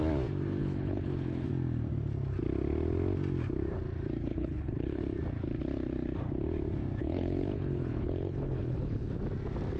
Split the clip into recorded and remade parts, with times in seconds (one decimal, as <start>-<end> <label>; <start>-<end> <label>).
0.0-0.6 recorded; 0.6-1.5 remade; 1.5-4.3 recorded; 4.3-5.0 remade; 5.0-7.0 recorded; 7.0-9.2 remade; 9.2-9.8 recorded